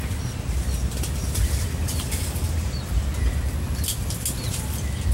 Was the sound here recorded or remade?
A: recorded